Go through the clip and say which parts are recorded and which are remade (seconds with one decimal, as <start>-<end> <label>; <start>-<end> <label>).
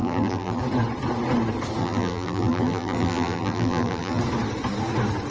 0.0-0.6 remade; 0.6-1.8 recorded; 1.8-4.2 remade; 4.2-5.3 recorded